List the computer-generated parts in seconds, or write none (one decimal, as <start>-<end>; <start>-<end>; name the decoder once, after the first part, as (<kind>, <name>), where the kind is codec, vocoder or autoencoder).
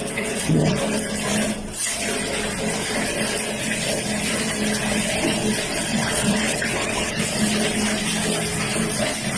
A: 0.0-0.8 (vocoder, WaveNeXt); 5.9-7.2